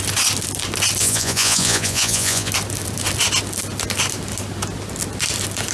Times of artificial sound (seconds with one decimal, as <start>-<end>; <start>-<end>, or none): 1.0-2.5